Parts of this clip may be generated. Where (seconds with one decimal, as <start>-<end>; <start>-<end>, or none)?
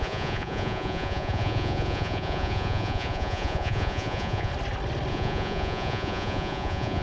0.0-4.5; 5.1-7.0